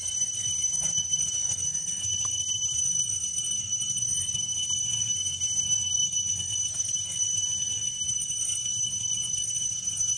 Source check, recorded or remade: remade